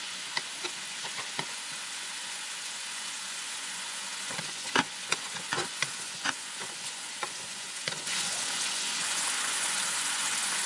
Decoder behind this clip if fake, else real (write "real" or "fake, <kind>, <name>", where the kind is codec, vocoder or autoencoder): fake, vocoder, Vocos